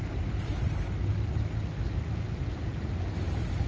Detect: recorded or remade recorded